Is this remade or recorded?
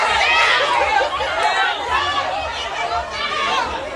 recorded